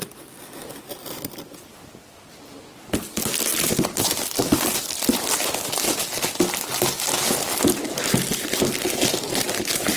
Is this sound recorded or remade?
recorded